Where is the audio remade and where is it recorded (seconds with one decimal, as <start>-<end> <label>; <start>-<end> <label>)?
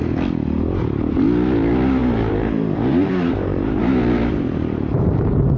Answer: 0.0-2.0 recorded; 2.0-5.6 remade